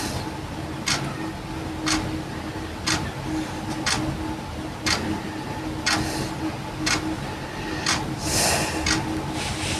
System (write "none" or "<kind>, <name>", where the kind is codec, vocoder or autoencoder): none